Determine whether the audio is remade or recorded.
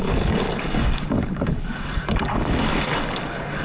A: remade